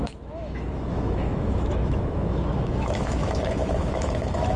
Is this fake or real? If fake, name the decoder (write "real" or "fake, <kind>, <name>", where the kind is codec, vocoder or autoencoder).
fake, autoencoder, DAC-VAE